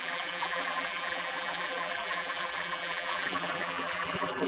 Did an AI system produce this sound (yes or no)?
yes